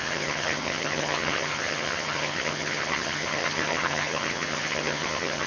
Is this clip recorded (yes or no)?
no